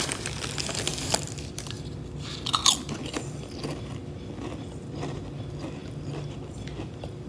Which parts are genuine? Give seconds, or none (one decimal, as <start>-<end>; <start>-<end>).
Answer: 0.0-7.3